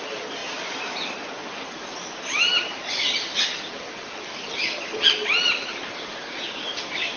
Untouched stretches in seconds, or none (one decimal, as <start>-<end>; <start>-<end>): 0.0-7.2